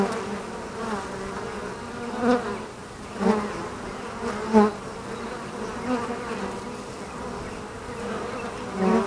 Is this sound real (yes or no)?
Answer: yes